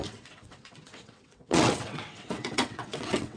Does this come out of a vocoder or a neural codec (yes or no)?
yes